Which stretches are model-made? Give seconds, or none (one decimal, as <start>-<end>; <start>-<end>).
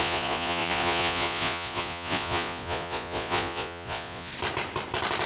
0.0-4.3